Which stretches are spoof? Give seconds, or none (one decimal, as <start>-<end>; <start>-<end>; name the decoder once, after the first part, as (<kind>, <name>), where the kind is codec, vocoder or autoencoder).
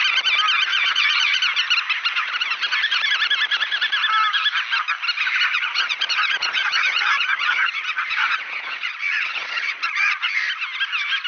0.7-1.4 (vocoder, Vocos); 5.5-10.3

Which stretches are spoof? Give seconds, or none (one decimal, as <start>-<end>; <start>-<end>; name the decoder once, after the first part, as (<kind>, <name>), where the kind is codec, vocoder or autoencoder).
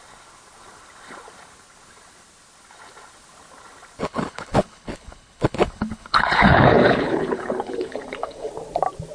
4.0-8.5 (codec, HILCodec)